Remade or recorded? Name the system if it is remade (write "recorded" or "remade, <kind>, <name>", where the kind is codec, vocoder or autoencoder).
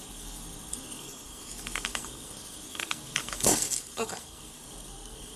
remade, codec, SNAC